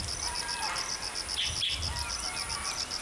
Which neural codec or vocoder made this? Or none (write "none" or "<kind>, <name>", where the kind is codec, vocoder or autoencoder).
none